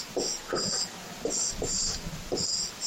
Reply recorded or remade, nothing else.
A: recorded